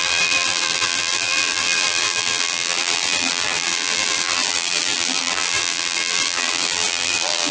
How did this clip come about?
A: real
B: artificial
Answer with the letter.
B